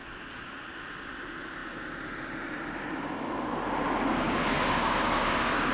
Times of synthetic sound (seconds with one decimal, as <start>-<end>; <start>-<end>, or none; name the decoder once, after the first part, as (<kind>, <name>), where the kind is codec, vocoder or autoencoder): 4.1-5.7 (codec, DAC)